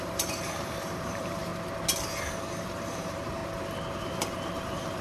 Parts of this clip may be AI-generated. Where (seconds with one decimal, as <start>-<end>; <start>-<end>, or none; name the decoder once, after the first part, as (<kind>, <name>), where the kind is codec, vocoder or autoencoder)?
0.0-1.5 (vocoder, BigVGAN v2); 2.6-3.4; 4.0-5.0